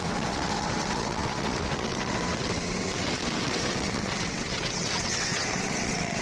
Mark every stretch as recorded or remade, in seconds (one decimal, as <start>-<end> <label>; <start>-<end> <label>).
0.0-6.2 remade